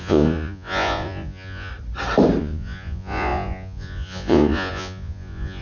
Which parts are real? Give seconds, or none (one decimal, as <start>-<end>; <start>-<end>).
1.7-2.4